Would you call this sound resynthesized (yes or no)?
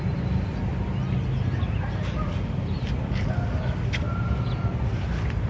no